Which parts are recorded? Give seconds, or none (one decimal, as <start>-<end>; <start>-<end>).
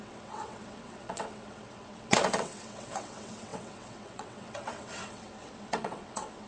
none